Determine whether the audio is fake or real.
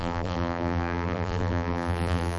fake